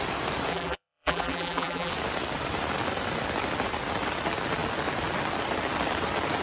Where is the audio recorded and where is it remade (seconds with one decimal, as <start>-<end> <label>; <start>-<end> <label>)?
0.0-0.5 recorded; 0.5-1.9 remade; 1.9-6.4 recorded